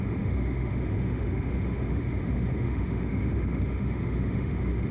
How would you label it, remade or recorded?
remade